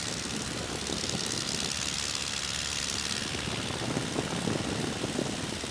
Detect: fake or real real